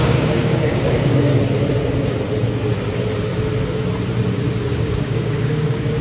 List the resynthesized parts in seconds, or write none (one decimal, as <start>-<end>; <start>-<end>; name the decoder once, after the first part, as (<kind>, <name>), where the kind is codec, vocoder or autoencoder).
0.0-1.3 (codec, DAC); 4.7-6.0